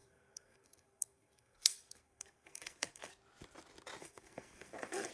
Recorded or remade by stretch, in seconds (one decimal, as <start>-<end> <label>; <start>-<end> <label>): 0.0-3.1 remade; 3.1-4.0 recorded; 4.0-5.1 remade